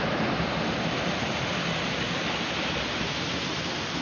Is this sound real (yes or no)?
yes